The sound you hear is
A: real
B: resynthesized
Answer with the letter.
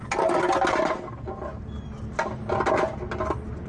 A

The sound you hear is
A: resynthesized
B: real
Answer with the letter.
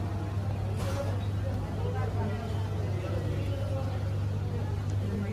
B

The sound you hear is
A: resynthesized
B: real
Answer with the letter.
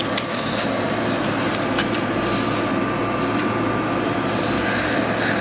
B